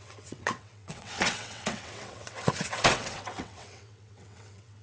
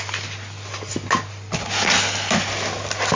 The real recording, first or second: second